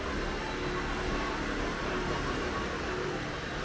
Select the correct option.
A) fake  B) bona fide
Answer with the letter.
B